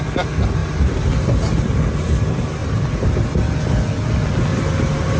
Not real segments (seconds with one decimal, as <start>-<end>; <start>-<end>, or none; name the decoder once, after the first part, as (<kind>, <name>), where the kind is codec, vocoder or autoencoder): 0.6-1.6 (vocoder, BigVGAN v2); 2.6-3.2; 4.5-5.2